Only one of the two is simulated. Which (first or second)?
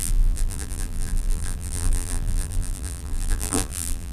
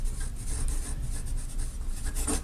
first